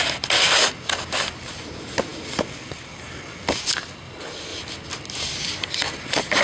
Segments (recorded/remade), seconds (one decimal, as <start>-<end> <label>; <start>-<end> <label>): 0.0-6.4 recorded